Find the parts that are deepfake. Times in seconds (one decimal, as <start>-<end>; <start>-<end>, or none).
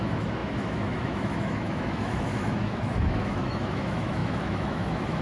0.0-5.2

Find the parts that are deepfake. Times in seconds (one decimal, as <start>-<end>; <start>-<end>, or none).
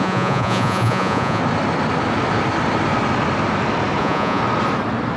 0.0-1.4; 4.0-4.4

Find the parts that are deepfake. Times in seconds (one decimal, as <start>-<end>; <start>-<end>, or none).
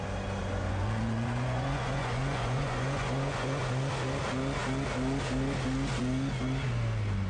0.4-3.6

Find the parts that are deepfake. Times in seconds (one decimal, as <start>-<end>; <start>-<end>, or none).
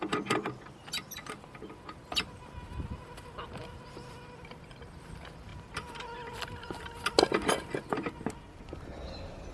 none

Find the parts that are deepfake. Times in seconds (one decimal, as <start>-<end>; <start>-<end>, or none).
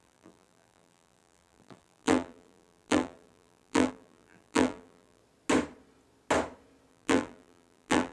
0.0-5.2; 6.9-8.1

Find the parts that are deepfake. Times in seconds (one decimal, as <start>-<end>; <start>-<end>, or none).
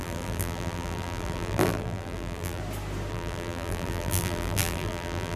0.0-2.6; 3.1-5.4